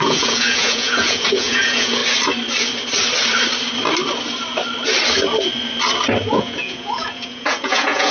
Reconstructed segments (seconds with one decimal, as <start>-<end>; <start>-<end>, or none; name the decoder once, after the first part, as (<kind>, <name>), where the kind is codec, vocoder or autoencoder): 0.0-2.0 (vocoder, Vocos); 6.3-8.1